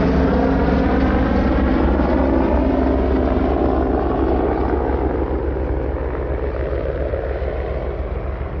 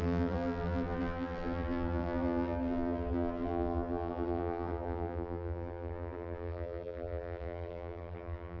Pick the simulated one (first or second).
second